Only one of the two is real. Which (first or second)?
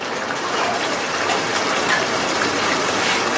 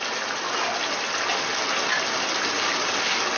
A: second